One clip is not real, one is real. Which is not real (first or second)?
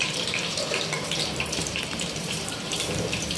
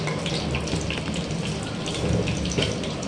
first